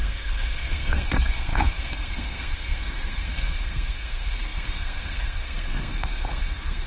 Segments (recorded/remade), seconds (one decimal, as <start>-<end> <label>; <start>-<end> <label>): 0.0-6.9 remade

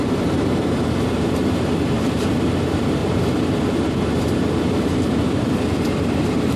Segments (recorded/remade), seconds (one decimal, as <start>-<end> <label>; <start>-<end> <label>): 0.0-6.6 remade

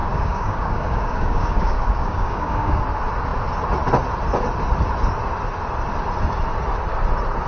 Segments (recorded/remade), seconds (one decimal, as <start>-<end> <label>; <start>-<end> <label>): 0.0-2.8 remade; 2.8-7.5 recorded

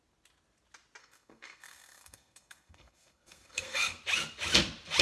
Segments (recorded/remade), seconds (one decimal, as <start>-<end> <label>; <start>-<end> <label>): 0.0-1.0 recorded; 1.0-4.0 remade; 4.0-5.0 recorded

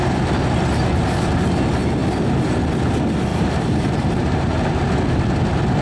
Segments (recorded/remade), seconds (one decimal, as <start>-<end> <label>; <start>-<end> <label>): 0.0-3.3 recorded; 3.3-4.8 remade; 4.8-5.8 recorded

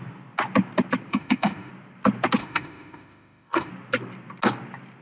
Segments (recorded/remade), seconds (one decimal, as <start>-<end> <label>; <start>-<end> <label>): 0.0-1.1 recorded; 1.1-1.7 remade; 1.7-2.4 recorded; 2.4-3.7 remade; 3.7-5.0 recorded